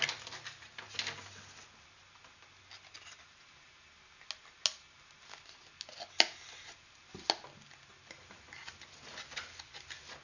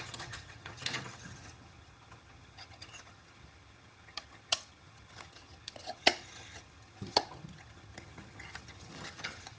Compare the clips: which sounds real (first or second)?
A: first